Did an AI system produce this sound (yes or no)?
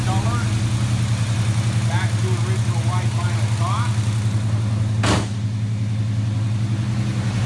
no